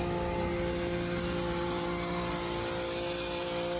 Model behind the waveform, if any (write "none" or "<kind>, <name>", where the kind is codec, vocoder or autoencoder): none